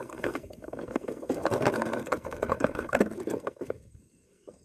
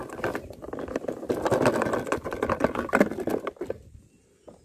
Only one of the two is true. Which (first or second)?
second